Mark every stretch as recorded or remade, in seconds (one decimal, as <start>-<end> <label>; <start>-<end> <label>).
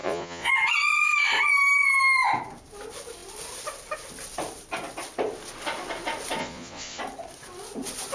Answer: 0.0-0.5 remade; 0.5-6.4 recorded; 6.4-7.0 remade; 7.0-8.1 recorded